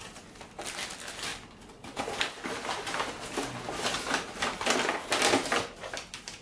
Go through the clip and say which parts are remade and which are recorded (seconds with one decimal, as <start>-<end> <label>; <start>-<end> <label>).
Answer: 0.0-6.4 recorded